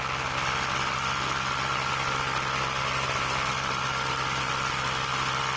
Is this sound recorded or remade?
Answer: recorded